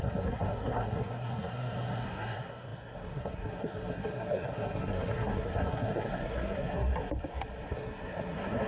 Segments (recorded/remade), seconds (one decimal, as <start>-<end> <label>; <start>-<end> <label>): 0.0-6.9 remade; 6.9-7.7 recorded; 7.7-8.7 remade